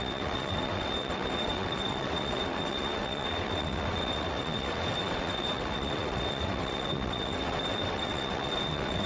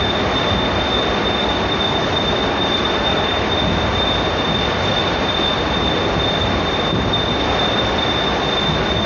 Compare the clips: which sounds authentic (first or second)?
second